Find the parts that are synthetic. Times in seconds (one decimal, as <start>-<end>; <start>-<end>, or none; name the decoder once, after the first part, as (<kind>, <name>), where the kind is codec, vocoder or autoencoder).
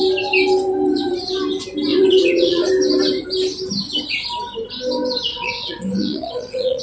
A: 1.9-2.7 (vocoder, WaveNeXt); 5.3-6.8